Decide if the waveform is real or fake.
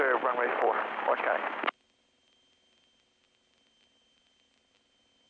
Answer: real